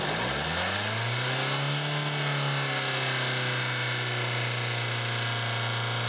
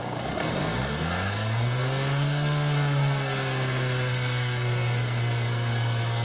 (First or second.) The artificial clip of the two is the second